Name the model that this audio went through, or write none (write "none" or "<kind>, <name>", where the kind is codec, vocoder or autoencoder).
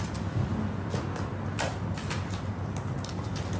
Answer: none